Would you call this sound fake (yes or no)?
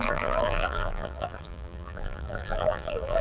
yes